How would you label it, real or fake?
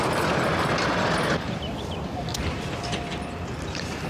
real